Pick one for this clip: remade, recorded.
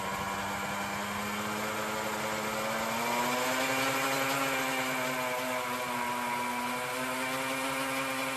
recorded